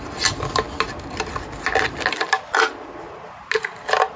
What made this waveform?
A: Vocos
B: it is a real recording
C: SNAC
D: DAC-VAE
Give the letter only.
B